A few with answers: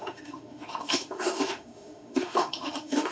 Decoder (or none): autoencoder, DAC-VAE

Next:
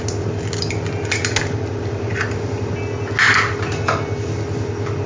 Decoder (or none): none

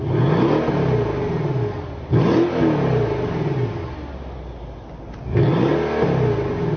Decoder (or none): none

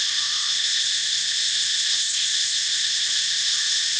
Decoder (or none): codec, ZipCodec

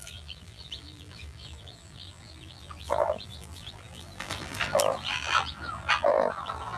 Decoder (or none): vocoder, BigVGAN v2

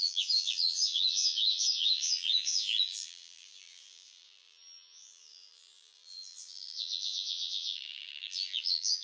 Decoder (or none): vocoder, BigVGAN v2